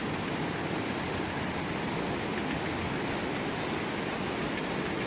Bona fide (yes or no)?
yes